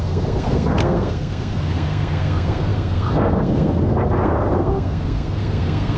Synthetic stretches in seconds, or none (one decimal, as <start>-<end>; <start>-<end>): 0.0-6.0